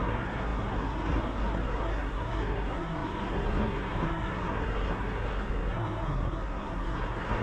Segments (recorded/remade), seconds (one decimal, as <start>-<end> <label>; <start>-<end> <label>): 0.0-7.4 remade